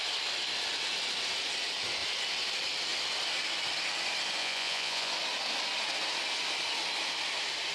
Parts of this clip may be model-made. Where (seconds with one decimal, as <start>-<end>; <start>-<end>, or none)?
4.4-5.1